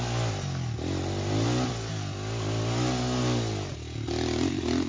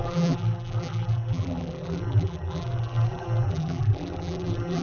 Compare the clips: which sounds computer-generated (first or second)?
second